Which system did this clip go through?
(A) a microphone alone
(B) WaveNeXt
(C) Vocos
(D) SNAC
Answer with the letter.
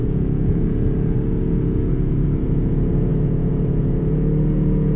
C